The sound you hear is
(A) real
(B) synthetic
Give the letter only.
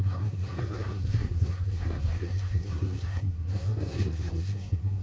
B